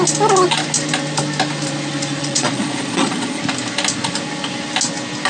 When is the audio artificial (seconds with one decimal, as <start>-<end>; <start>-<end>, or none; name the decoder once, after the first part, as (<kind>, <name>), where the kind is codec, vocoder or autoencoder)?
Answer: 2.2-3.4 (vocoder, Vocos)